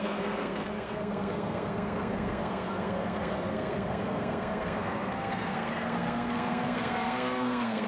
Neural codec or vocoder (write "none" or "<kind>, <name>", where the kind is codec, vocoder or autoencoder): codec, SNAC